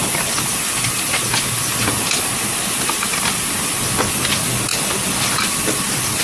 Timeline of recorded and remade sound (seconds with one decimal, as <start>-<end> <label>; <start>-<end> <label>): 0.0-4.7 recorded; 4.7-6.2 remade